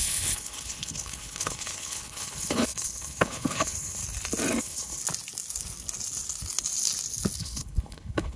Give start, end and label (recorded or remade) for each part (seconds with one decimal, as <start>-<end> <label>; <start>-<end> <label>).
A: 0.0-4.0 remade; 4.0-4.6 recorded; 4.6-5.0 remade; 5.0-7.4 recorded; 7.4-8.4 remade